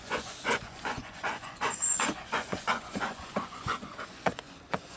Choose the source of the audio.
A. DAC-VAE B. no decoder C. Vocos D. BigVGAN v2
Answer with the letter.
C